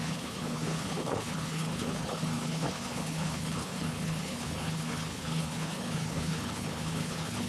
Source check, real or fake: fake